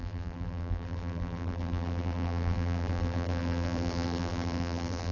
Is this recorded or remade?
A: remade